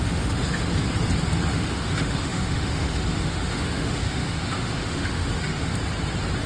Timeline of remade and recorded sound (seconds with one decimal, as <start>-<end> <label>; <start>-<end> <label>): 0.0-0.7 remade; 0.7-1.5 recorded; 1.5-5.7 remade; 5.7-6.5 recorded